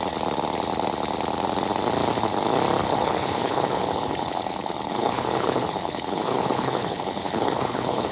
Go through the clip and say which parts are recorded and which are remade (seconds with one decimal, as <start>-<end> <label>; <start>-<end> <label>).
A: 0.0-2.8 recorded; 2.8-8.1 remade